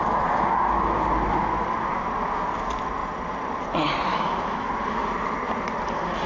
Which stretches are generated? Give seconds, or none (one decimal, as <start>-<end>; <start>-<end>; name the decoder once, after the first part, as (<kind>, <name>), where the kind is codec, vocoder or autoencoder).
4.1-4.7 (autoencoder, DAC-VAE)